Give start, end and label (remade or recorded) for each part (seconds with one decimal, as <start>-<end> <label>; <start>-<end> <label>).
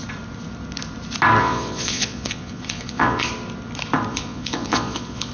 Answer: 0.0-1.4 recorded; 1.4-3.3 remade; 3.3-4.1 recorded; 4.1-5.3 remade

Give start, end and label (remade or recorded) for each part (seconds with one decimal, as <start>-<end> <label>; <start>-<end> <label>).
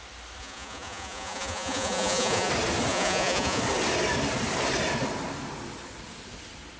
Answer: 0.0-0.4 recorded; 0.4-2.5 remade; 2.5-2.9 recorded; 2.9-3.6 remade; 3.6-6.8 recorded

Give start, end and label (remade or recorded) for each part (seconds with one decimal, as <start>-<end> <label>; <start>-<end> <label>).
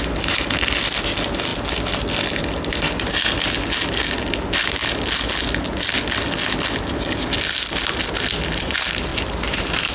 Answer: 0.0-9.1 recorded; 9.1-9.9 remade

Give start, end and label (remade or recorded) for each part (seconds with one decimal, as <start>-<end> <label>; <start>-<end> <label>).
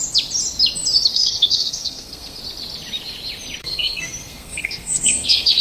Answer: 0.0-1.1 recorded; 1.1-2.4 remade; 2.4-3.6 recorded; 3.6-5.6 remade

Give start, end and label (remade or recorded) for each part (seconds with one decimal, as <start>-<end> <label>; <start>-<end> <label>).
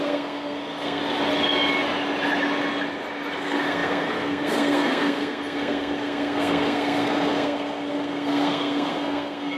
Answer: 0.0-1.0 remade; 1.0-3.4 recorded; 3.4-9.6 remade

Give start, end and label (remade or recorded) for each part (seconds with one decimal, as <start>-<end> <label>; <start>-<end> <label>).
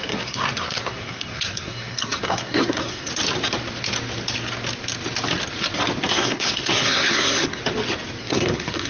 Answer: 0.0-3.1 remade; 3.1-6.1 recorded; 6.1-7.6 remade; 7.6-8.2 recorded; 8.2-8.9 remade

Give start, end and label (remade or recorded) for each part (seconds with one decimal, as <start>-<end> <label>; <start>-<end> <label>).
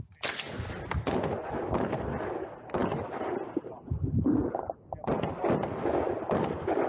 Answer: 0.0-6.9 recorded